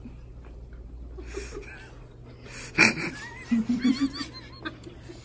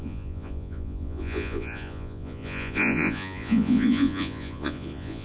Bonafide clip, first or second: first